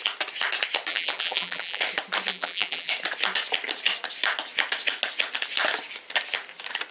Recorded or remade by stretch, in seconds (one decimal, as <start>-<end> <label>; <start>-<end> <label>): 0.0-0.9 recorded; 0.9-1.8 remade; 1.8-2.3 recorded; 2.3-2.9 remade; 2.9-6.9 recorded